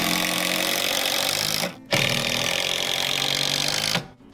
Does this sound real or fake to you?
real